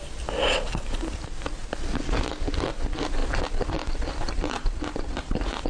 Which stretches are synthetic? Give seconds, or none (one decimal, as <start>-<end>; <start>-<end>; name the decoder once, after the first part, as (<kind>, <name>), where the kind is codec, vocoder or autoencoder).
none